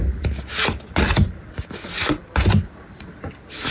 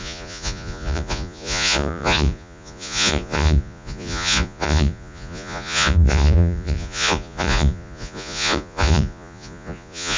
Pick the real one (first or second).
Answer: first